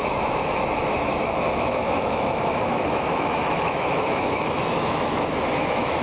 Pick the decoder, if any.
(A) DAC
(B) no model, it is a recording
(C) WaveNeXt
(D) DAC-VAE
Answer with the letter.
D